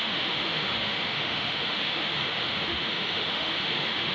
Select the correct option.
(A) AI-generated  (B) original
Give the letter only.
A